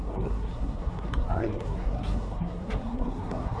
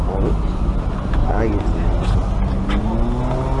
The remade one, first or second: first